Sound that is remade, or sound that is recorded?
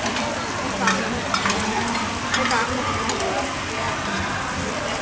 recorded